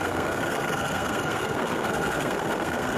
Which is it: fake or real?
fake